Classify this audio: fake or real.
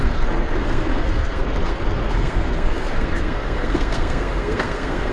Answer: fake